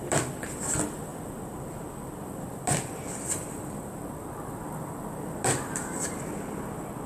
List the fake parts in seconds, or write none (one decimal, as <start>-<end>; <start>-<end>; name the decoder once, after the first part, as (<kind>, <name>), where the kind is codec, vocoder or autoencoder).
none